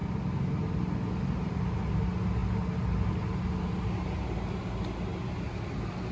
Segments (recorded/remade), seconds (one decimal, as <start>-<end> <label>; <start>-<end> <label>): 0.0-6.1 recorded